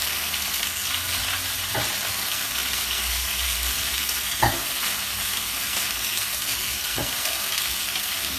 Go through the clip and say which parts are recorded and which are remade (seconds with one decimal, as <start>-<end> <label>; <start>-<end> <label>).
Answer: 0.0-1.2 remade; 1.2-2.1 recorded; 2.1-8.4 remade